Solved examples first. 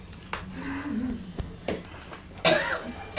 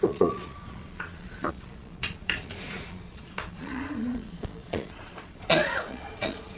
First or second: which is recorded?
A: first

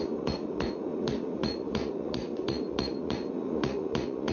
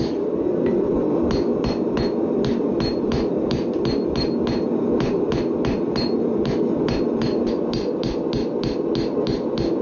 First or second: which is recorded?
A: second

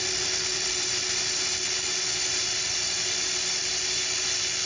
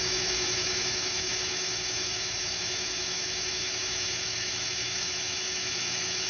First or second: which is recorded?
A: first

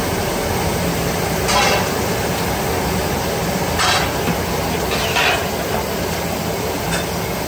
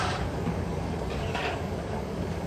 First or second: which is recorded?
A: first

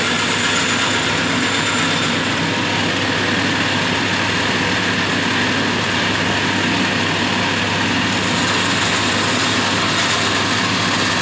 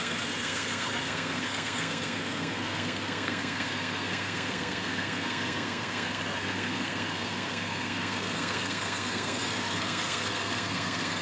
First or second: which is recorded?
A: first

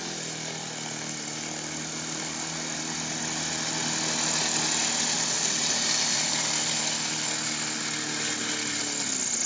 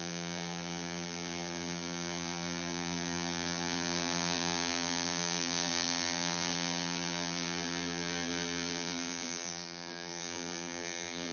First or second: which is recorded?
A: first